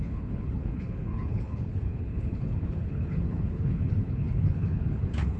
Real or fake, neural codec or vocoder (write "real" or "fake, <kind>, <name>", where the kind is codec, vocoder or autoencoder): fake, codec, HILCodec